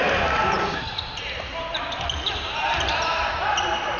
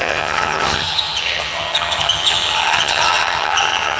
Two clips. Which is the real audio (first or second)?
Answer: first